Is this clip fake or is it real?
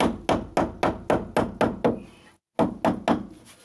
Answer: real